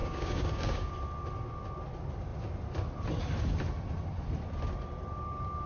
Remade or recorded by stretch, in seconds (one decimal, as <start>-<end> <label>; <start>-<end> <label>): 0.0-0.9 remade; 0.9-5.7 recorded